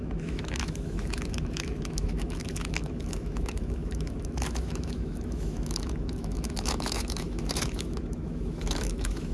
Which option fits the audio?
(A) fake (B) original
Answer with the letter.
A